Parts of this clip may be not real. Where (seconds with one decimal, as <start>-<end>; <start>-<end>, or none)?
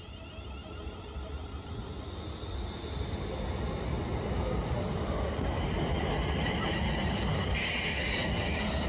none